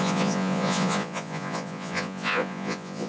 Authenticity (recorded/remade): remade